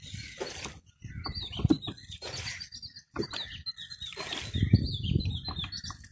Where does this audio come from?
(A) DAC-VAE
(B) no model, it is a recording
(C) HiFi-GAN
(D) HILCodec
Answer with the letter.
B